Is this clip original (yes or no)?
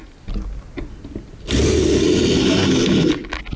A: yes